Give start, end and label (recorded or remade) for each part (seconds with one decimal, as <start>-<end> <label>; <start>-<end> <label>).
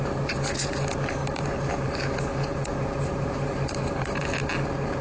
0.0-1.2 recorded; 1.2-2.1 remade; 2.1-2.7 recorded; 2.7-4.2 remade; 4.2-5.0 recorded